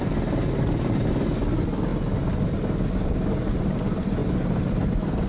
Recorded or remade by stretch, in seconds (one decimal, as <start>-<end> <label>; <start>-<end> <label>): 0.0-5.3 recorded